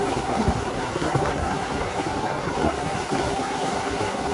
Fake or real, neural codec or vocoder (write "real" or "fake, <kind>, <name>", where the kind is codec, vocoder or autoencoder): fake, codec, SNAC